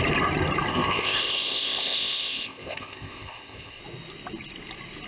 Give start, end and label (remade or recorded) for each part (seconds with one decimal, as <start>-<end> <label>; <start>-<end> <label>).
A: 0.0-0.7 recorded; 0.7-3.8 remade; 3.8-5.1 recorded